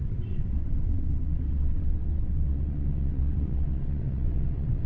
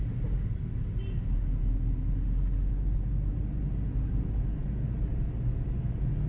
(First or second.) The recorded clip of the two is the second